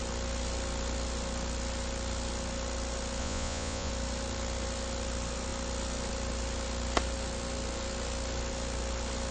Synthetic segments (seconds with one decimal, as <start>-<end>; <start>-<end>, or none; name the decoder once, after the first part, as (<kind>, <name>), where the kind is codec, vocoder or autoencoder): 3.2-3.9 (vocoder, Vocos)